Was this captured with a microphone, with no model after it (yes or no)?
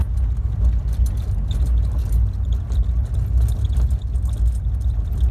yes